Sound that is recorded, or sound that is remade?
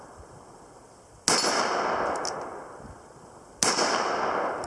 recorded